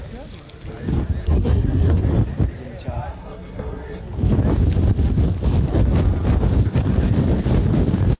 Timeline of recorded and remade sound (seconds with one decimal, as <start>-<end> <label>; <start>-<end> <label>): 0.0-1.2 recorded; 1.2-2.0 remade; 2.0-3.1 recorded; 3.1-4.0 remade; 4.0-8.2 recorded